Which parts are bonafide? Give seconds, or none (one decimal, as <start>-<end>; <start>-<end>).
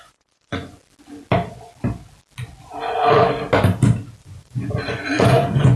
0.8-4.2